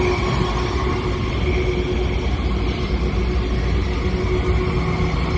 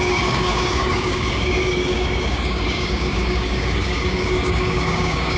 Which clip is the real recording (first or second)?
first